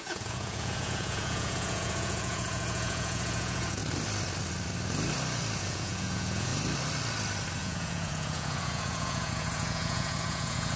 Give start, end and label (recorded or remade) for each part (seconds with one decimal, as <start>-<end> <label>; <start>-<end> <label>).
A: 0.0-3.8 remade; 3.8-5.6 recorded; 5.6-6.5 remade; 6.5-7.6 recorded; 7.6-10.8 remade